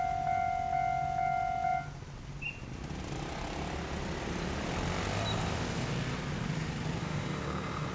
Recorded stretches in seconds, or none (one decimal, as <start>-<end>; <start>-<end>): 0.0-7.0